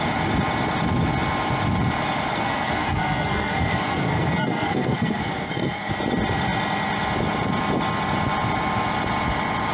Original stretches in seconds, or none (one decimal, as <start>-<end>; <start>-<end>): 0.0-2.3; 5.9-9.7